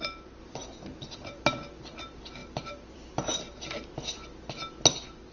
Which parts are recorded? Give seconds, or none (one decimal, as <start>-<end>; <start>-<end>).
0.0-0.6; 1.4-2.4; 3.6-5.3